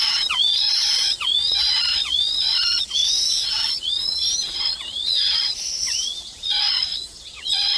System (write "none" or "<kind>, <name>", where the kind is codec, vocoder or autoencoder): vocoder, Vocos